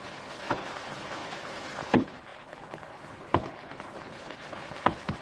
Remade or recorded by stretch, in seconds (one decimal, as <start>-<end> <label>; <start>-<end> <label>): 0.0-5.2 remade